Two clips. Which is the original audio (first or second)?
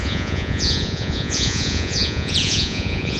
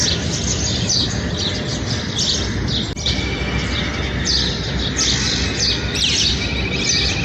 second